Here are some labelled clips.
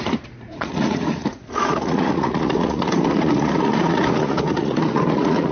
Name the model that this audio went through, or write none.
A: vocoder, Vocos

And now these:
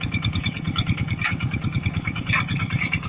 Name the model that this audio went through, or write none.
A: codec, DAC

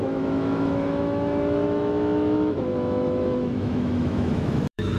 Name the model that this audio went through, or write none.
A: autoencoder, DAC-VAE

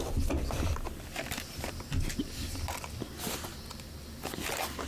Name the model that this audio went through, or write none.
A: none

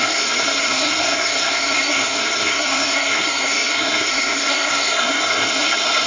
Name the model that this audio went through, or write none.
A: codec, SNAC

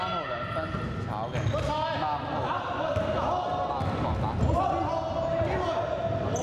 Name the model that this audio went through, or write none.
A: none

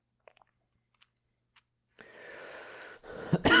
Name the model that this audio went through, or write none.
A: none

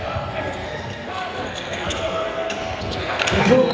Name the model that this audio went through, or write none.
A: codec, SNAC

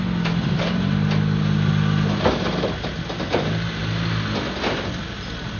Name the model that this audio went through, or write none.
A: none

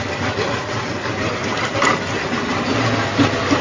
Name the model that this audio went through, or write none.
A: none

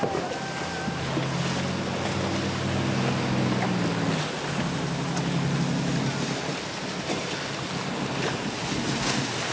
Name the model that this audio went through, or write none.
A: none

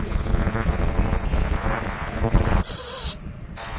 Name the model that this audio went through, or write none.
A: vocoder, Vocos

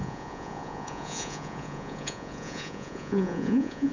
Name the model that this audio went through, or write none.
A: vocoder, Vocos